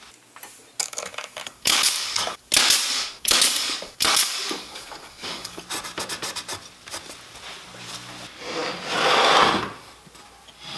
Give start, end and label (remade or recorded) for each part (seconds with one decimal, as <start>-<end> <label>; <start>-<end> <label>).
0.0-0.8 recorded; 0.8-2.5 remade; 2.5-2.9 recorded; 2.9-5.6 remade; 5.6-10.8 recorded